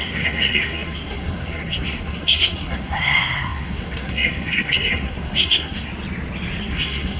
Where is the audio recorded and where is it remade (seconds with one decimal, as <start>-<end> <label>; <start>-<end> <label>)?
0.0-5.9 remade; 5.9-6.6 recorded; 6.6-7.2 remade